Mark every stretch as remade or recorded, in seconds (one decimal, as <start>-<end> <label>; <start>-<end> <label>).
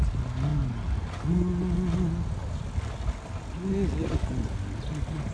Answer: 0.0-5.3 recorded